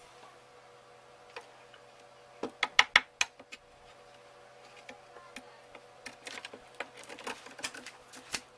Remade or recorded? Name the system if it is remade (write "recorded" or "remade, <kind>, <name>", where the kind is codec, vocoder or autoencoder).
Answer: recorded